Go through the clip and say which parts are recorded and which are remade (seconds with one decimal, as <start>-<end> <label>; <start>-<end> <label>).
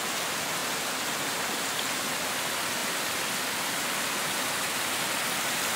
0.0-5.8 recorded